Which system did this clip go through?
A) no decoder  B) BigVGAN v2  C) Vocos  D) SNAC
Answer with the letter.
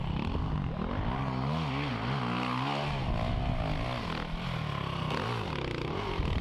A